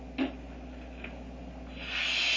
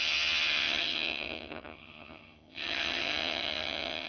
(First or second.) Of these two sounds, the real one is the first